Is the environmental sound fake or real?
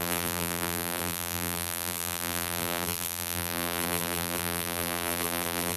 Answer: fake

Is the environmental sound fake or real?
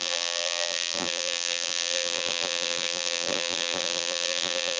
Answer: fake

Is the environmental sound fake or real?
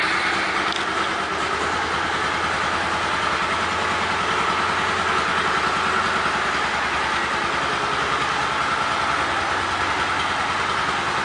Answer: real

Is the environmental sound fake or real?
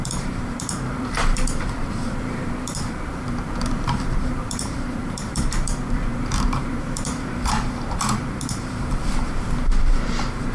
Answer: fake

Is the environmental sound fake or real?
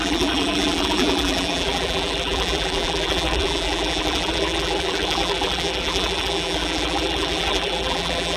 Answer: fake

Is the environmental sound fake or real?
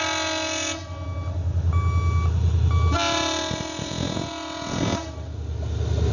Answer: real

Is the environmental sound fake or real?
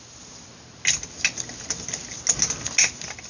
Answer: real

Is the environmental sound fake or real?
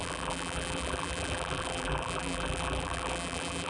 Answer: fake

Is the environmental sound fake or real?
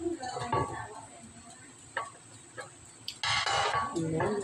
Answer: real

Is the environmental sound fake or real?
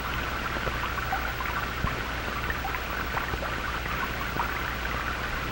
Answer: real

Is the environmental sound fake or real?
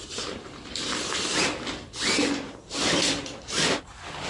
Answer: fake